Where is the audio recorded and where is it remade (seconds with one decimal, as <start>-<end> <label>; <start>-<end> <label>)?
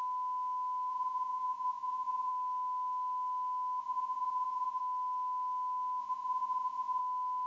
0.0-0.9 recorded; 0.9-2.3 remade; 2.3-3.8 recorded; 3.8-4.8 remade; 4.8-6.0 recorded; 6.0-7.0 remade; 7.0-7.5 recorded